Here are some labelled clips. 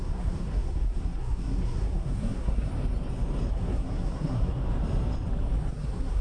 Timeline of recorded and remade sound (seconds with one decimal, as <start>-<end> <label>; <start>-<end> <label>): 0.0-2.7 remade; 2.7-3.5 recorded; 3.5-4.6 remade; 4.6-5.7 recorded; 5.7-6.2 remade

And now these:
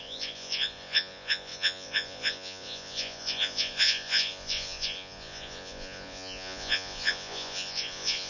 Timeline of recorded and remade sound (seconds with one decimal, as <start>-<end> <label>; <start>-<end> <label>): 0.0-8.3 remade

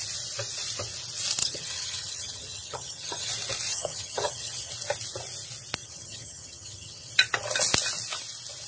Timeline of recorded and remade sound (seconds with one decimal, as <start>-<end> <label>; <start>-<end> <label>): 0.0-1.4 recorded; 1.4-3.3 remade; 3.3-3.7 recorded; 3.7-4.7 remade; 4.7-5.8 recorded; 5.8-7.1 remade; 7.1-8.7 recorded

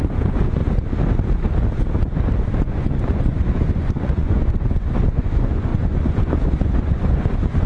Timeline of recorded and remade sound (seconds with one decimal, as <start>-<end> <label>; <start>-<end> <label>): 0.0-0.6 remade; 0.6-2.5 recorded; 2.5-7.7 remade

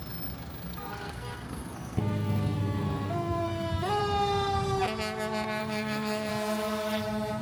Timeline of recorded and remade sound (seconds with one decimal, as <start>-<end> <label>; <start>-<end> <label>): 0.0-0.7 recorded; 0.7-4.0 remade; 4.0-5.6 recorded; 5.6-6.3 remade; 6.3-7.4 recorded

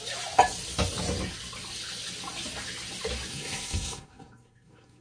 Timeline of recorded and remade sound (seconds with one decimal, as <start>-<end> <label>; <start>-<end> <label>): 0.0-3.3 recorded; 3.3-5.0 remade